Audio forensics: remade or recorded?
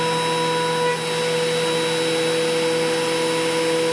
recorded